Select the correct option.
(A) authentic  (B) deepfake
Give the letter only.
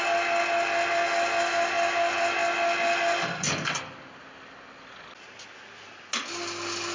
A